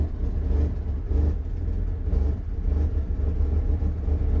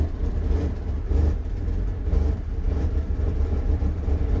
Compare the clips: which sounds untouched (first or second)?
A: first